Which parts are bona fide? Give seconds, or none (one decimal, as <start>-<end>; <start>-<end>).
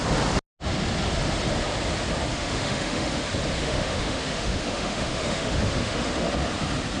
0.0-2.3; 3.2-3.6; 6.3-7.0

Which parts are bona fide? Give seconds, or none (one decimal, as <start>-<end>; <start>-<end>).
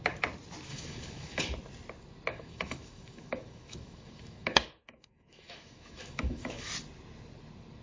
0.0-0.7; 1.4-2.3; 6.7-7.8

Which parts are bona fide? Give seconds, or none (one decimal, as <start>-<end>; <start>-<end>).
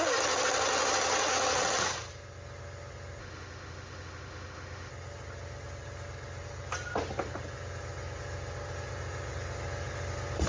0.0-3.2; 4.9-10.5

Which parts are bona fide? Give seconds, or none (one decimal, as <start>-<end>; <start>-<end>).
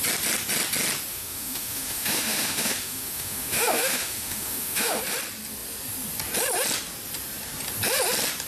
0.0-1.1; 5.0-8.5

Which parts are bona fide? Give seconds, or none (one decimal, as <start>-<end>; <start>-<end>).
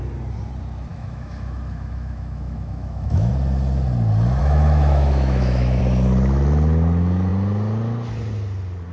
0.0-0.9; 3.3-4.4; 5.8-8.9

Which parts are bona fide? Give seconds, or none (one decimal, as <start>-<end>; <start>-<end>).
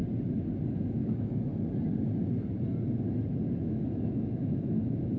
0.0-0.7; 1.5-3.6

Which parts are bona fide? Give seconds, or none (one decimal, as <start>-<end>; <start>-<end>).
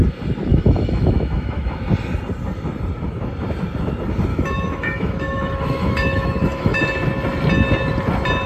0.0-0.5; 1.8-4.3; 6.8-8.5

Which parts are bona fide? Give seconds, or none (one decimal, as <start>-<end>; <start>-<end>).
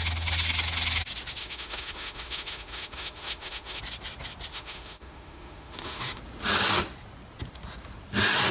0.0-1.4; 3.8-4.5; 6.2-8.5